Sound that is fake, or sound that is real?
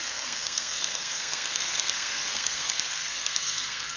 fake